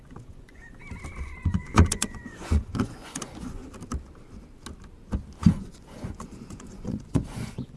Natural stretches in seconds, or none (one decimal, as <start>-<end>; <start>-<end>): 0.7-1.2; 3.6-5.4